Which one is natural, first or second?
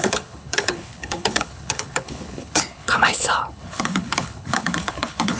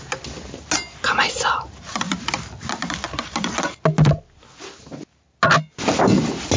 second